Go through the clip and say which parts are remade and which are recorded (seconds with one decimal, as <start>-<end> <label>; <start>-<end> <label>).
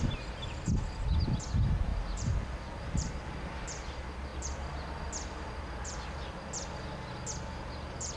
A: 0.0-1.9 recorded; 1.9-3.1 remade; 3.1-8.2 recorded